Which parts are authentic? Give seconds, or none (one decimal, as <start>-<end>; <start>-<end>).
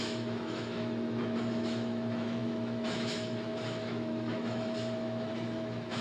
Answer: none